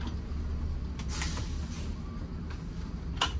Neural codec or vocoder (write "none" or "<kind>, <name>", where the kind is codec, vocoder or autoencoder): none